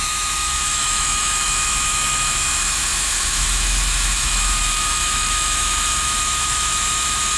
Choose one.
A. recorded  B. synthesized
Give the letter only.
B